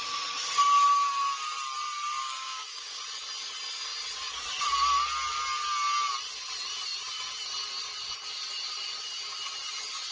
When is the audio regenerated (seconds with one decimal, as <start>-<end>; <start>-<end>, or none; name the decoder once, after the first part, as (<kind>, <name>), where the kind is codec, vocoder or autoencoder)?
2.2-3.0 (codec, DAC)